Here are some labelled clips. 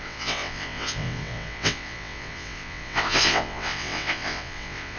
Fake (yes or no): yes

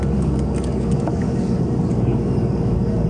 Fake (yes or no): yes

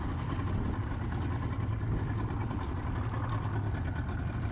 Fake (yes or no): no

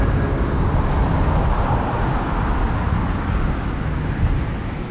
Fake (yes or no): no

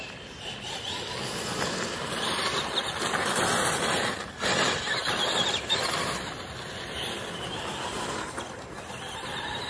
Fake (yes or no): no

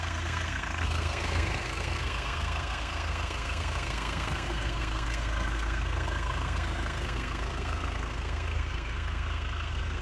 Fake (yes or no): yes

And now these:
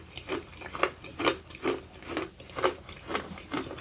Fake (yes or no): no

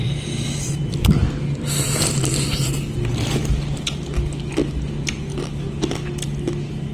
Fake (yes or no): no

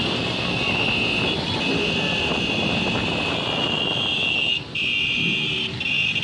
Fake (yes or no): no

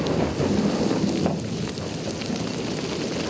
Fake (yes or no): no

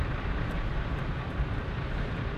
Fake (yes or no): no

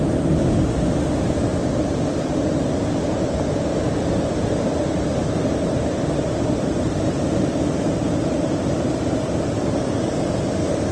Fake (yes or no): no